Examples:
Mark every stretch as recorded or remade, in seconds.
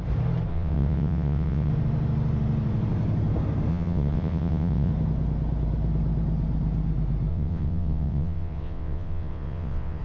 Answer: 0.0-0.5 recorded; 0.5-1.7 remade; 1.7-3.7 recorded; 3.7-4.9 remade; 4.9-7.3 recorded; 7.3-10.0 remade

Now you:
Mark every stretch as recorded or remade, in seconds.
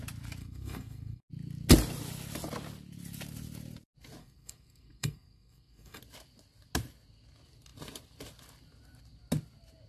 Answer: 0.0-0.4 recorded; 0.4-1.2 remade; 1.2-4.2 recorded; 4.2-6.0 remade; 6.0-9.9 recorded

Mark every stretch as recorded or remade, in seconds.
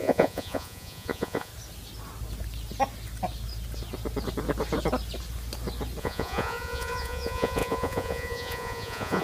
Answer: 0.0-1.5 remade; 1.5-6.0 recorded; 6.0-9.2 remade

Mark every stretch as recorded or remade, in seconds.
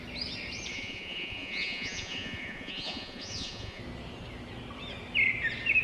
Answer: 0.0-0.7 recorded; 0.7-3.8 remade; 3.8-5.8 recorded